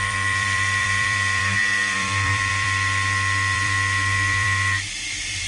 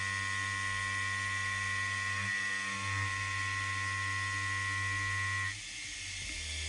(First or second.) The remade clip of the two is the first